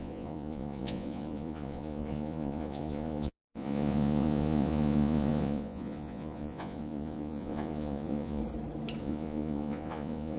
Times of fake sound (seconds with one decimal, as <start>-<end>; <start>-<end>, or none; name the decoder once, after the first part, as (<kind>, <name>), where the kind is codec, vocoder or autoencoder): 0.0-8.4 (vocoder, Vocos); 9.0-10.4